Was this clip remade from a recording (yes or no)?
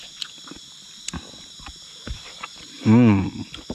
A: no